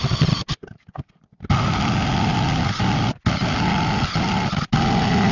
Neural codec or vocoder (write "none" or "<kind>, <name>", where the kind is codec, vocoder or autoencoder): none